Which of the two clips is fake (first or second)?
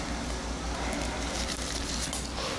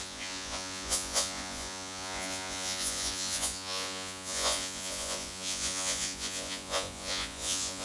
second